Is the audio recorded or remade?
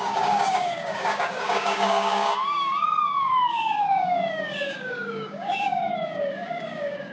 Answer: remade